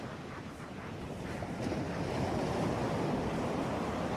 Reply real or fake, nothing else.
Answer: real